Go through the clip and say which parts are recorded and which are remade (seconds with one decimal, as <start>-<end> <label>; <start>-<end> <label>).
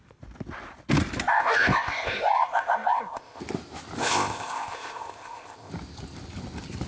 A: 0.0-1.3 recorded; 1.3-3.4 remade; 3.4-4.0 recorded; 4.0-5.7 remade; 5.7-6.9 recorded